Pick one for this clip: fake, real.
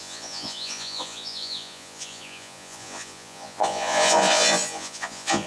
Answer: fake